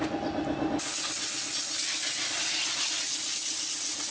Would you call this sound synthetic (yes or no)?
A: no